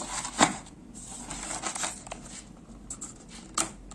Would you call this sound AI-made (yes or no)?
no